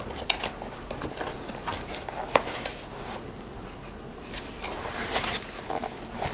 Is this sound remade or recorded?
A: recorded